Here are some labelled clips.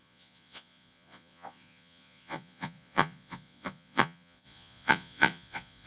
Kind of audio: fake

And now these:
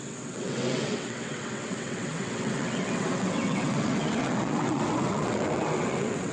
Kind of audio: fake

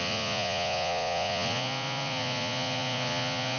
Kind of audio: fake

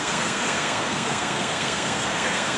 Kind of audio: fake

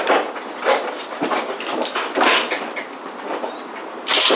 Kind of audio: real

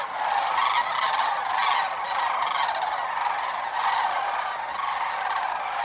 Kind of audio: real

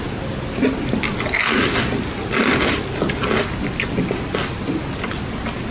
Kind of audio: real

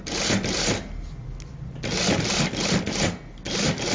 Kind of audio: real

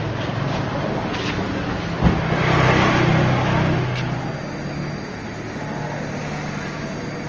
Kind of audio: real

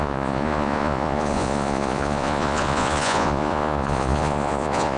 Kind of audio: fake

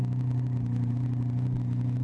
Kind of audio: real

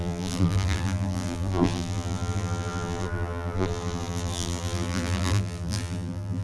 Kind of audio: fake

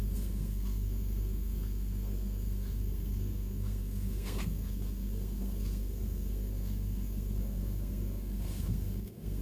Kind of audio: fake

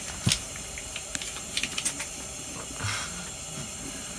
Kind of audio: real